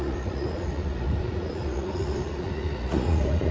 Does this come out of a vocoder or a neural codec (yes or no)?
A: yes